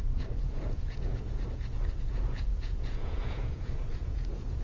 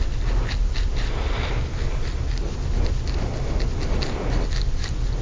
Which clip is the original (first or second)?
second